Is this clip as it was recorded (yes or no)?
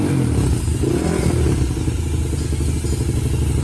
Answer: yes